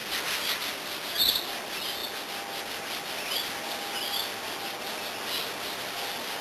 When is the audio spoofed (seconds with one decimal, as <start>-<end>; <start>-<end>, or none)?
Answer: none